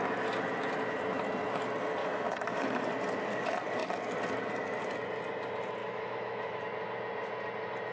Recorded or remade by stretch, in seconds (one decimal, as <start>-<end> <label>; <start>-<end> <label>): 0.0-2.0 recorded; 2.0-2.8 remade; 2.8-5.8 recorded; 5.8-6.6 remade; 6.6-7.9 recorded